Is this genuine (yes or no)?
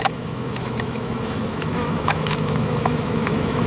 no